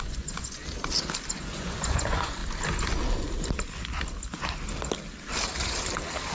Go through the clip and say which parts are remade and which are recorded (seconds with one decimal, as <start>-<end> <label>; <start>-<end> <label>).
0.0-0.6 remade; 0.6-1.3 recorded; 1.3-2.4 remade; 2.4-6.3 recorded